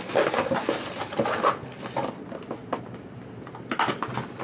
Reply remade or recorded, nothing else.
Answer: recorded